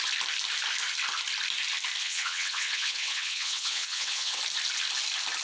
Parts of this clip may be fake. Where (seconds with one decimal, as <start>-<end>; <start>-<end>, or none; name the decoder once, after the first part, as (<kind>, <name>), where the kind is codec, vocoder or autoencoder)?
2.0-4.4 (vocoder, WaveNeXt)